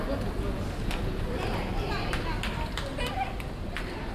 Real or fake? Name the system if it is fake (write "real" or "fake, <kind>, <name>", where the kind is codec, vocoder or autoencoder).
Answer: real